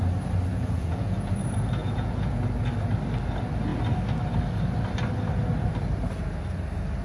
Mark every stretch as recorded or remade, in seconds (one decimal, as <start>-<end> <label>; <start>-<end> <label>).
0.0-0.5 recorded; 0.5-1.3 remade; 1.3-1.8 recorded; 1.8-2.4 remade; 2.4-7.0 recorded